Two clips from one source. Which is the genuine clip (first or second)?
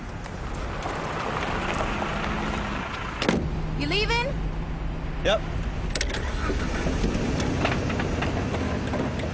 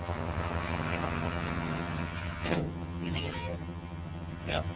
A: first